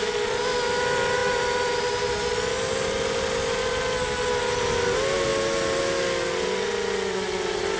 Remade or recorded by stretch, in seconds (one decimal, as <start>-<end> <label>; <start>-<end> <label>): 0.0-7.8 recorded